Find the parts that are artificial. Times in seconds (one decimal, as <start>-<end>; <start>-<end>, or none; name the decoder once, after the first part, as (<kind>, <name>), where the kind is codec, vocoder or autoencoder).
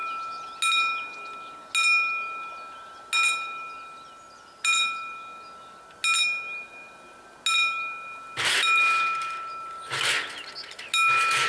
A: none